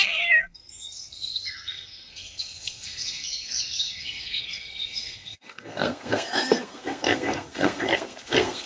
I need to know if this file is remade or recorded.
remade